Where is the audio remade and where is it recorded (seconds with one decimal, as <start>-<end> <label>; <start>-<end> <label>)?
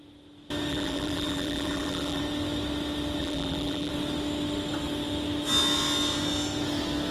0.0-0.7 recorded; 0.7-2.2 remade; 2.2-3.2 recorded; 3.2-3.9 remade; 3.9-7.1 recorded